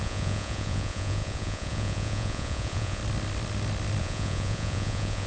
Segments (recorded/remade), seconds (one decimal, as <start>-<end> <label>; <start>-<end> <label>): 0.0-3.0 remade; 3.0-4.0 recorded; 4.0-5.3 remade